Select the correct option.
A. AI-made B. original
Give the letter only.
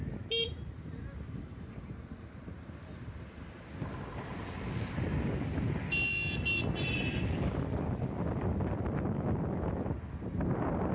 B